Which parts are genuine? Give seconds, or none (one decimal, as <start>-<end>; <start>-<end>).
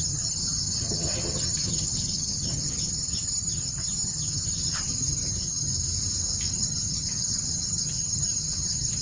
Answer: 5.7-6.5